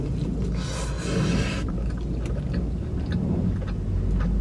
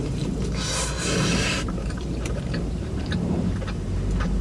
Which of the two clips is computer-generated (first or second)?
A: second